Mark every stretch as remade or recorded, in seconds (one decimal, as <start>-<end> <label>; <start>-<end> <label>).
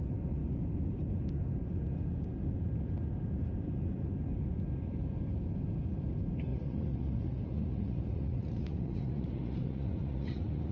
0.0-6.5 recorded; 6.5-10.7 remade